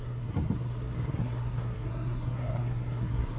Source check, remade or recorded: remade